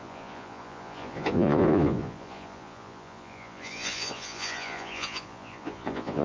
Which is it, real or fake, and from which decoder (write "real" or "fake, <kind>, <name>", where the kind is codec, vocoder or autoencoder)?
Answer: fake, vocoder, Vocos